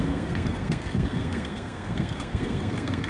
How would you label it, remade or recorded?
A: remade